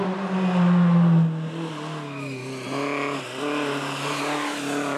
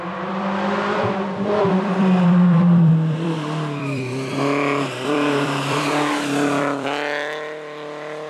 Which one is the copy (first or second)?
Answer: second